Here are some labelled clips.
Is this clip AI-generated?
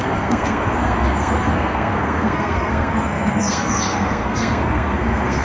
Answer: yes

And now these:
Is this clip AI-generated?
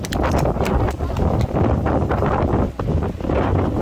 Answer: no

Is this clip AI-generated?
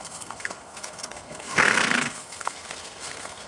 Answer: yes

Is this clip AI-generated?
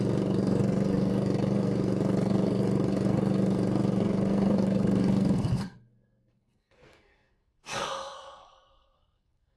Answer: yes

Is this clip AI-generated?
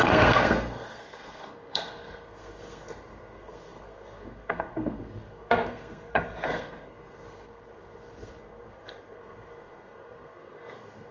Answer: yes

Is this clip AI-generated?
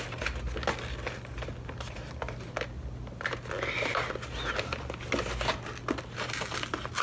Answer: no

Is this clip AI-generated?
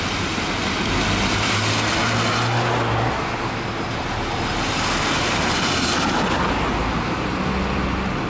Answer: no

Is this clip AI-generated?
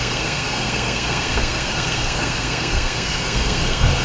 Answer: yes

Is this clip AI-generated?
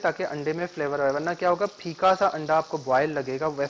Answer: no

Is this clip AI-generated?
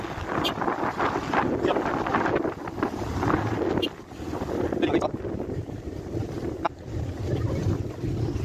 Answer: no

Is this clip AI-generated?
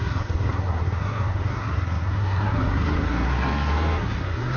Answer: yes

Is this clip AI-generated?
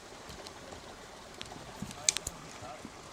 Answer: no